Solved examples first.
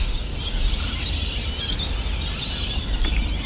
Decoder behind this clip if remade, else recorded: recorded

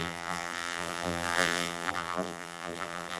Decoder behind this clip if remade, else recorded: remade, vocoder, BigVGAN v2